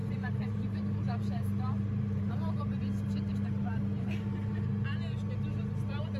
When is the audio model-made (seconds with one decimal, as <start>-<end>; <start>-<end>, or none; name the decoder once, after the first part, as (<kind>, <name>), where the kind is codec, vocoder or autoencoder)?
0.0-2.8 (vocoder, BigVGAN v2); 3.3-4.5